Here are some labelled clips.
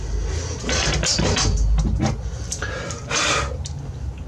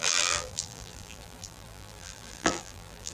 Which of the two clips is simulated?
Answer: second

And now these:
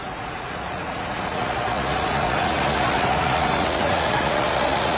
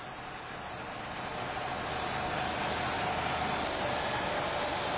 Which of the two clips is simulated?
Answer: first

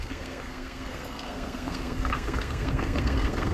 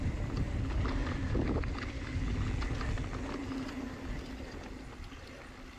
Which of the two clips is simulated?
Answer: first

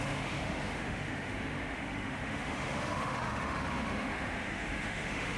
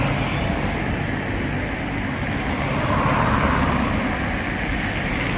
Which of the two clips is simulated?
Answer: first